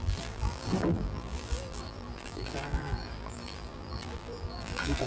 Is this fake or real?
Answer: fake